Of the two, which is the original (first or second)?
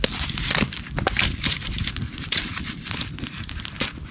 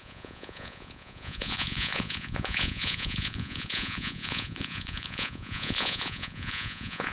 first